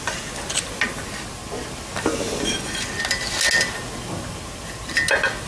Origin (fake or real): real